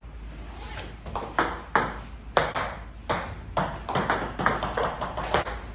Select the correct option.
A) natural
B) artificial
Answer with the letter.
A